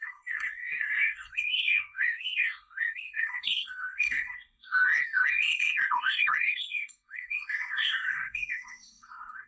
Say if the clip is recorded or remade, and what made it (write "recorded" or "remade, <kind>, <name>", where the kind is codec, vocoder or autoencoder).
remade, codec, SNAC